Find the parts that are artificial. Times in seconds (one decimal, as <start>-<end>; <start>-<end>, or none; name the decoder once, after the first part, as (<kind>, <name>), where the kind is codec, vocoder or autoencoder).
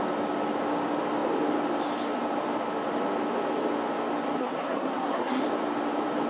4.4-5.4 (codec, SNAC)